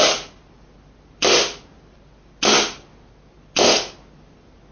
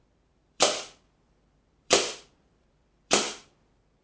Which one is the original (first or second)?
first